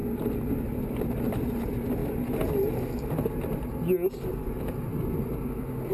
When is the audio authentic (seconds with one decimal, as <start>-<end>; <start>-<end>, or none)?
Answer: 0.0-5.9